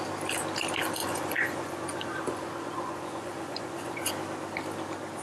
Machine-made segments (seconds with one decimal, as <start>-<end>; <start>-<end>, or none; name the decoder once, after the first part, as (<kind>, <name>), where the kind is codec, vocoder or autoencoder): 1.0-4.1 (vocoder, Vocos)